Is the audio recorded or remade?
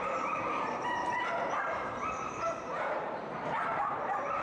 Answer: remade